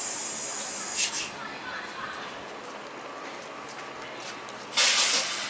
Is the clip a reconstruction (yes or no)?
no